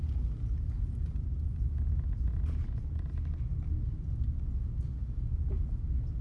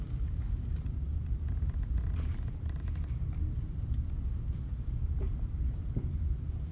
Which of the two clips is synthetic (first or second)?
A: second